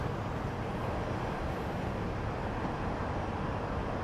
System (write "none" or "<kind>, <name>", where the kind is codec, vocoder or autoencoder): none